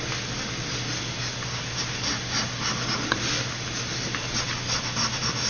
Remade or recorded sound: recorded